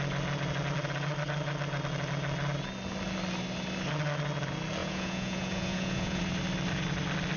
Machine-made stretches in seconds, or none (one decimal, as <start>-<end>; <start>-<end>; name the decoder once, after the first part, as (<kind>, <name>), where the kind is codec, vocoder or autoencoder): 4.8-6.2 (vocoder, Vocos)